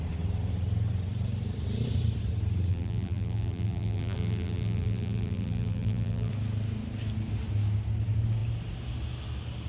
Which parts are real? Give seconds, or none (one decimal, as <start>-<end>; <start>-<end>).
0.0-2.7; 6.3-9.7